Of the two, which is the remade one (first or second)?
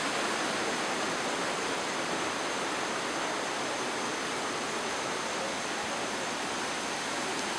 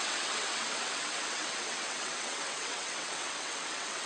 second